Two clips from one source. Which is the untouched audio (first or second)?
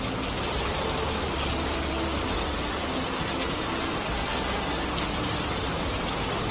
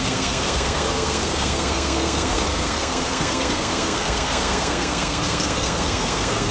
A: first